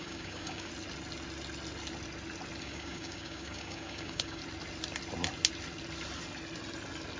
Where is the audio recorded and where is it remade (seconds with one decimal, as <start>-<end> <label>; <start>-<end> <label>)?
0.0-0.7 remade; 0.7-2.6 recorded; 2.6-4.4 remade; 4.4-7.2 recorded